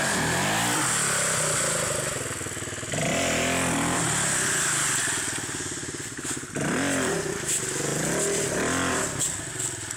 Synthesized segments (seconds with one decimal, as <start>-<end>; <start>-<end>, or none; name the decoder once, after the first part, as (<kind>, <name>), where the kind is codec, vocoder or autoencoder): none